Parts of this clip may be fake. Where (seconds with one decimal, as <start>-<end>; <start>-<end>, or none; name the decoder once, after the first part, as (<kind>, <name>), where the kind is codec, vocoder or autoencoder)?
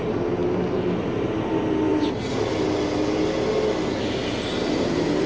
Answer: none